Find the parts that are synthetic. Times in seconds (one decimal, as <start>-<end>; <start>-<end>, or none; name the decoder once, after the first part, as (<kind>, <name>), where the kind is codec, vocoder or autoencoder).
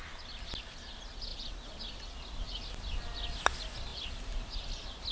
none